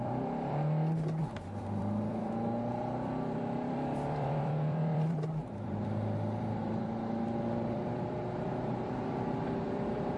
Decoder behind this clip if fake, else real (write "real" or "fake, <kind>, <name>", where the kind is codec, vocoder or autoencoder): fake, vocoder, BigVGAN v2